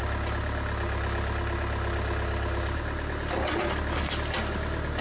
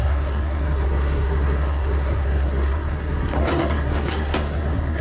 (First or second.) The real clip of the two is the first